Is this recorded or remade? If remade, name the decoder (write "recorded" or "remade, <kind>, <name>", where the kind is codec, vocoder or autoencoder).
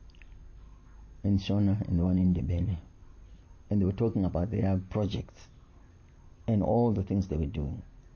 recorded